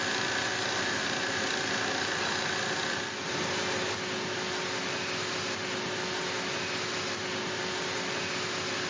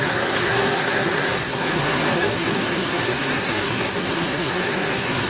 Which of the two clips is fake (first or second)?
second